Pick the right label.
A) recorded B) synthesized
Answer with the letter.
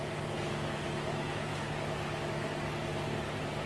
B